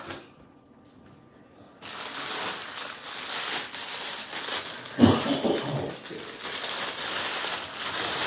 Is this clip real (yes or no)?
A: yes